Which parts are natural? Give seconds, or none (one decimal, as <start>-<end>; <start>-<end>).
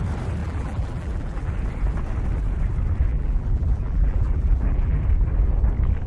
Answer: 0.0-0.4; 1.5-3.1; 5.0-6.1